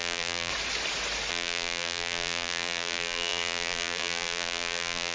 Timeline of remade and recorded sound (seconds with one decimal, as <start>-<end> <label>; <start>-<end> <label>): 0.0-0.5 remade; 0.5-1.3 recorded; 1.3-5.1 remade